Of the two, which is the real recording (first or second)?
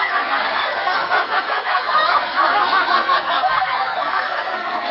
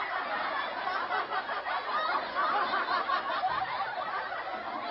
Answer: second